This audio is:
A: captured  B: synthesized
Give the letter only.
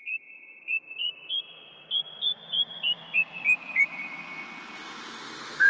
A